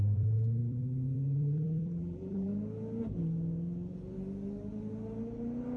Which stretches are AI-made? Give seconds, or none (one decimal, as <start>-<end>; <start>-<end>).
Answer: 0.0-2.5